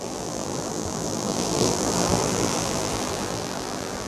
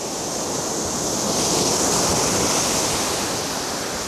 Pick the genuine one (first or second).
second